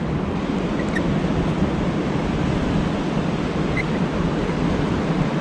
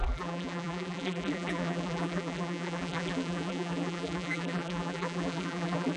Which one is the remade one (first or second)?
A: second